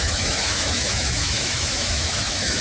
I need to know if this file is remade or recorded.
remade